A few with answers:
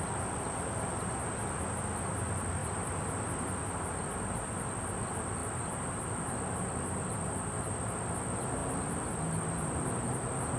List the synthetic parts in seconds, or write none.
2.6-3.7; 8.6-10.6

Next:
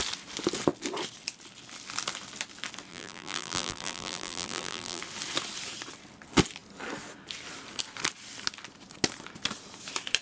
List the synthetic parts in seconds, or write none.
2.9-5.0

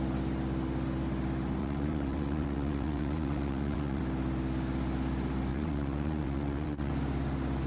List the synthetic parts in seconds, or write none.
1.6-4.0; 5.5-6.9

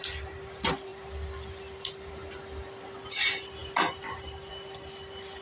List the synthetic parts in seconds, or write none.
0.9-2.1; 3.6-4.5